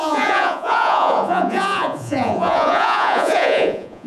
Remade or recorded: remade